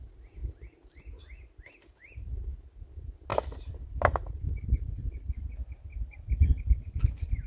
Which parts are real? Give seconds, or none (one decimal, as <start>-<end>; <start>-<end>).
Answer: 0.0-7.5

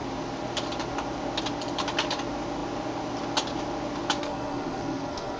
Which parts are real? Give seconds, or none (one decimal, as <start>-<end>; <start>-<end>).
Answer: 0.0-4.2